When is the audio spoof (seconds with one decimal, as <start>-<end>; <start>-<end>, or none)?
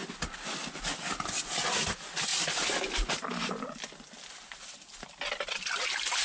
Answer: none